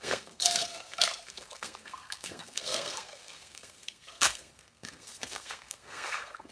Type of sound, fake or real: fake